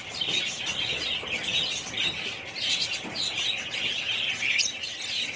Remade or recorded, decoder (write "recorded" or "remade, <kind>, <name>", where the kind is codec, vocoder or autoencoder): recorded